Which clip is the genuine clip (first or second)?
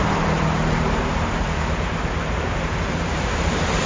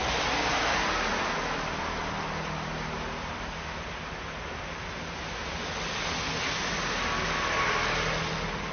second